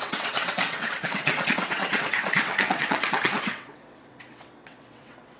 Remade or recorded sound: remade